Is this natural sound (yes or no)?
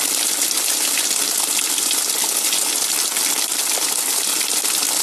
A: yes